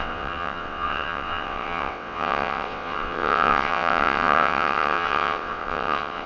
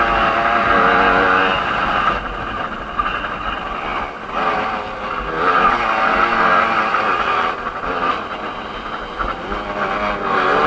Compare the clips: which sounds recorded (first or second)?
second